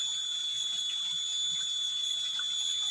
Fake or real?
real